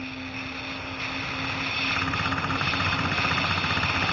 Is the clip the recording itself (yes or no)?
yes